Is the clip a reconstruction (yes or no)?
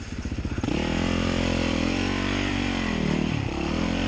yes